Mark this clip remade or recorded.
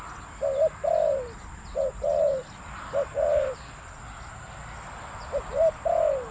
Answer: recorded